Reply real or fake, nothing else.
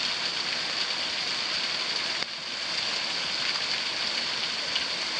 real